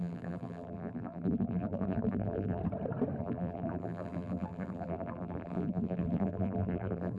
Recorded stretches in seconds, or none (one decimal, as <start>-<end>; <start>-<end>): 2.6-3.2